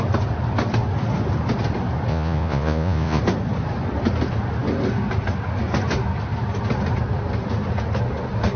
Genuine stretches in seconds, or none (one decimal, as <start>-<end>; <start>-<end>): 0.0-2.1; 3.2-8.6